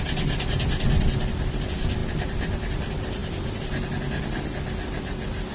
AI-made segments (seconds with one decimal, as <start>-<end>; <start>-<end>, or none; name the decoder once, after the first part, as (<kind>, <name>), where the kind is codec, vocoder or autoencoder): none